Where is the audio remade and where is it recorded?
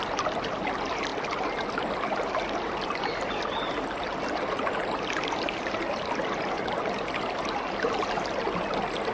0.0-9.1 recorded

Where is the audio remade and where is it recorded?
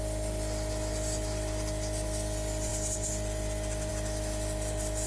0.0-5.1 recorded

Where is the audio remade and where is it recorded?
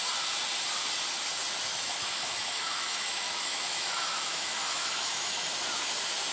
0.0-1.7 recorded; 1.7-5.5 remade; 5.5-6.3 recorded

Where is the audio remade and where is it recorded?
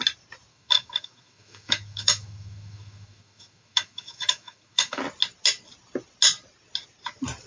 0.0-0.5 recorded; 0.5-5.0 remade; 5.0-7.5 recorded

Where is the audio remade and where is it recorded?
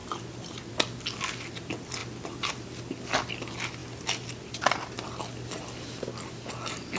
0.0-7.0 recorded